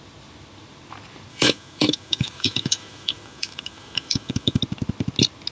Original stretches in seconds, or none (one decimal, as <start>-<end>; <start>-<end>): 0.0-1.3; 4.6-5.5

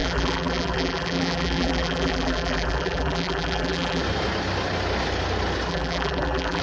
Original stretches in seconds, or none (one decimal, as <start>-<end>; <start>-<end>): 4.0-5.7

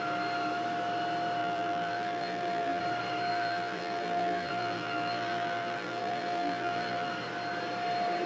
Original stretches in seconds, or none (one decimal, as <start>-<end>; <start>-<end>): 0.0-1.4; 2.8-3.3; 7.1-8.3

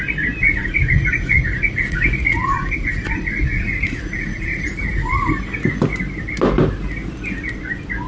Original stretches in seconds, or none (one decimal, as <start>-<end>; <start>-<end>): 0.0-0.4; 5.3-8.1

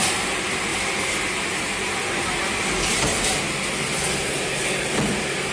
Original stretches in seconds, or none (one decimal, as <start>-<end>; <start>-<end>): 0.0-5.5